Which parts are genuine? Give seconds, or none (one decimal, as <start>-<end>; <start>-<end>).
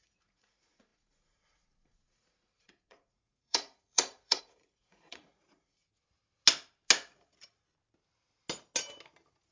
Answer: 5.8-9.5